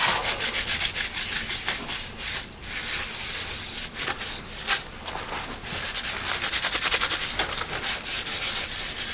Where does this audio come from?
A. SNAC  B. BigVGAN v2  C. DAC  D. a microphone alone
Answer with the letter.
D